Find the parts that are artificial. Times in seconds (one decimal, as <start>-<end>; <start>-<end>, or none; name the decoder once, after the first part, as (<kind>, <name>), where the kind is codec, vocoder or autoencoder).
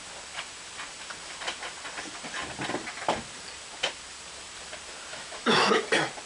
5.1-5.8 (autoencoder, DAC-VAE)